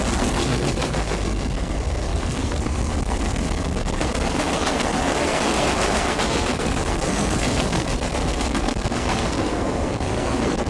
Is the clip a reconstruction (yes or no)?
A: yes